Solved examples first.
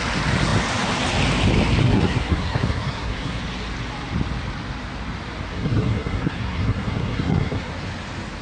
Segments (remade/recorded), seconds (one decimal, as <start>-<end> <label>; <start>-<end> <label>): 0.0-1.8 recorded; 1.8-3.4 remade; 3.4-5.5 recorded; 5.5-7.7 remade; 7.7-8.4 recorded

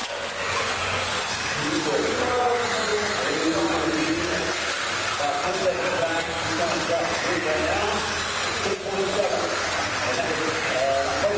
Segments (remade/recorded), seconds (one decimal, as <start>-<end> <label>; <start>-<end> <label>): 0.0-1.3 remade; 1.3-8.4 recorded; 8.4-9.7 remade; 9.7-11.4 recorded

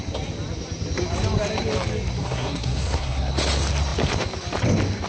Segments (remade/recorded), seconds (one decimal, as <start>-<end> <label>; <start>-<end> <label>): 0.0-2.2 recorded; 2.2-3.3 remade; 3.3-5.1 recorded